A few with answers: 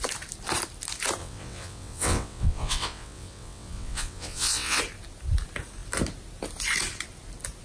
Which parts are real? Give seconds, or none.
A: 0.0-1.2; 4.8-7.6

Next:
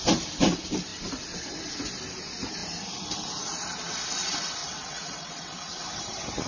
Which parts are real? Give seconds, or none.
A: 0.0-4.6; 6.0-6.5